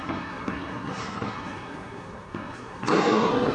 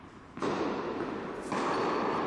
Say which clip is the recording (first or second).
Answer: second